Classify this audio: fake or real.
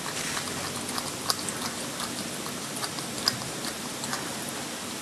real